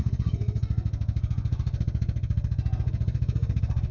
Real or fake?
fake